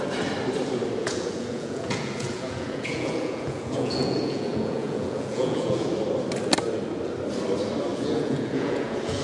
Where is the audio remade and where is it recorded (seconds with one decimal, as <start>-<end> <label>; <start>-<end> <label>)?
0.0-1.0 recorded; 1.0-5.9 remade; 5.9-7.9 recorded; 7.9-9.2 remade